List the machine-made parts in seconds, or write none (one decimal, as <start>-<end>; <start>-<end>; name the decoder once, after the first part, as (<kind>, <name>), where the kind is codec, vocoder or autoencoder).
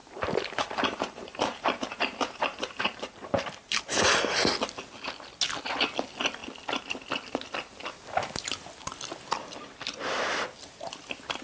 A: 0.0-3.8 (vocoder, BigVGAN v2)